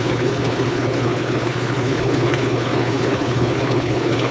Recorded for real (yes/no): no